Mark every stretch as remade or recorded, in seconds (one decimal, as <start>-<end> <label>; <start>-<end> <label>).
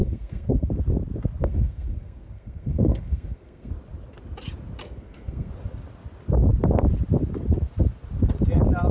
0.0-0.7 remade; 0.7-1.4 recorded; 1.4-3.7 remade; 3.7-4.8 recorded; 4.8-5.5 remade; 5.5-8.9 recorded